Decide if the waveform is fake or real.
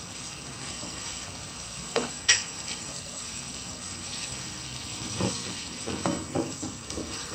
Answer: fake